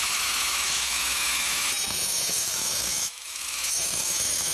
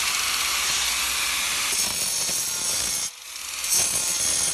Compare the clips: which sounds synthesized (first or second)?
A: first